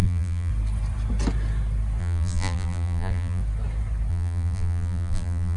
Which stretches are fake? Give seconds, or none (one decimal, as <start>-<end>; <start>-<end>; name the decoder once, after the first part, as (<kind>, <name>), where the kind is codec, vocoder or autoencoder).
0.0-0.5 (vocoder, BigVGAN v2); 2.0-3.4; 4.1-5.6